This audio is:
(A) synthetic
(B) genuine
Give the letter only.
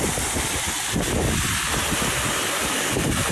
B